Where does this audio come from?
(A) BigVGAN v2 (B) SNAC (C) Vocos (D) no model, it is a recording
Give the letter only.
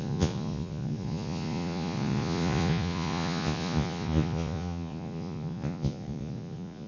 C